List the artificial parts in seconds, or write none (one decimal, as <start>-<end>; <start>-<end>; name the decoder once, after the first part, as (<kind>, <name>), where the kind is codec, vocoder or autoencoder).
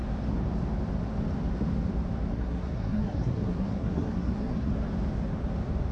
2.3-4.7 (codec, SNAC)